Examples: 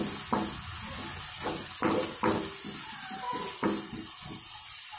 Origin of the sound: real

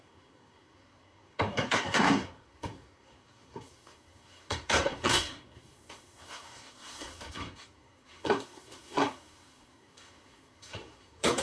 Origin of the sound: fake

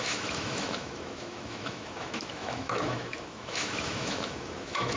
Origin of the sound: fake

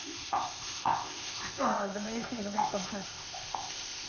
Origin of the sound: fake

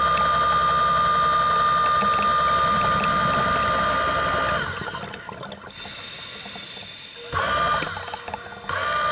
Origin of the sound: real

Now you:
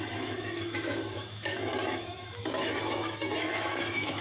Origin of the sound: fake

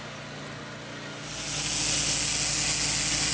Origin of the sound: real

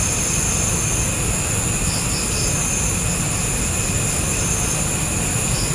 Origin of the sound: real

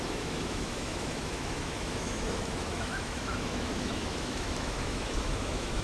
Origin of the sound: fake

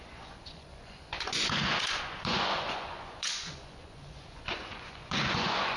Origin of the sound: fake